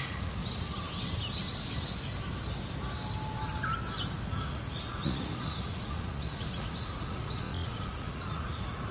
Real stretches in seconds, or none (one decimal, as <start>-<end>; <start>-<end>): 0.4-4.3